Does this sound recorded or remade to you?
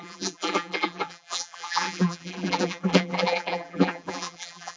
remade